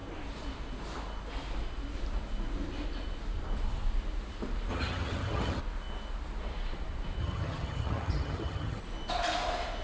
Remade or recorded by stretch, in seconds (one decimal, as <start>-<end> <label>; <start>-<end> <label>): 0.0-4.7 recorded; 4.7-5.6 remade; 5.6-7.2 recorded; 7.2-8.8 remade; 8.8-9.8 recorded